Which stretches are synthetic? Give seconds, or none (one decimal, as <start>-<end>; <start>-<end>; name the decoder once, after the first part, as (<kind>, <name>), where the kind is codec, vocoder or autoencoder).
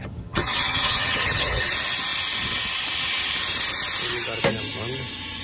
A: 0.0-1.7 (vocoder, HiFi-GAN)